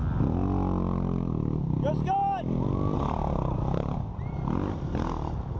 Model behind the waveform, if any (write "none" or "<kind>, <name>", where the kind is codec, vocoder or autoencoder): none